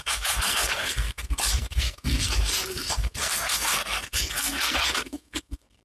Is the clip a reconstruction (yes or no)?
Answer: yes